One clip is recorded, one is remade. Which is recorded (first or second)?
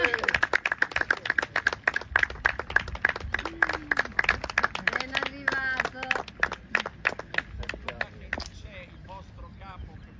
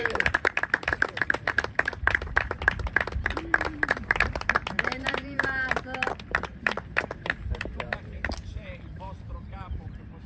first